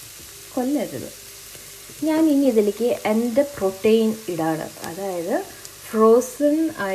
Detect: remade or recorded recorded